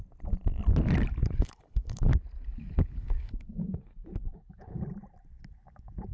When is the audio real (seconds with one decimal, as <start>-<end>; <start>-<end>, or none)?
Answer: 0.0-1.2; 2.1-2.8; 4.8-6.1